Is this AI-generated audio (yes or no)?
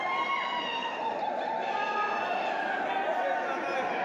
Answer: no